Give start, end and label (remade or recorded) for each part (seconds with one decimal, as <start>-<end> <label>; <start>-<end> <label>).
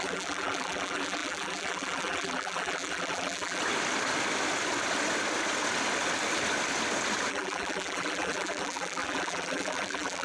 0.0-3.6 remade; 3.6-7.3 recorded; 7.3-10.2 remade